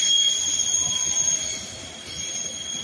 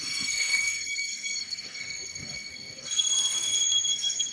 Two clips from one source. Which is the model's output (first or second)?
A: second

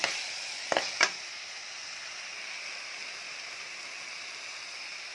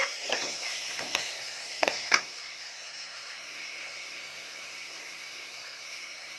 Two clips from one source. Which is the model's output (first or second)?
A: second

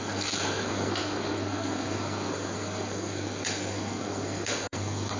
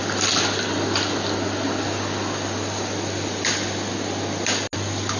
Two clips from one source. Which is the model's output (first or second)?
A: first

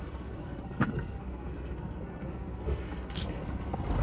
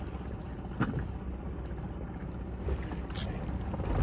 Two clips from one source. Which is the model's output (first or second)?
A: first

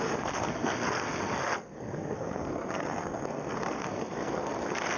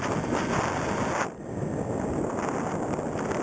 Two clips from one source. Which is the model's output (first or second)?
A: first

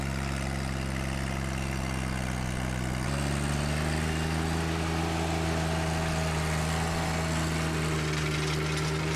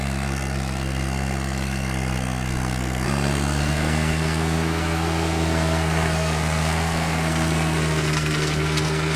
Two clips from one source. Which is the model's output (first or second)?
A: second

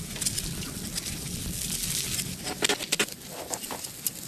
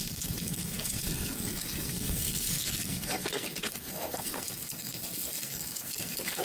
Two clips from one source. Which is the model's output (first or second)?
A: second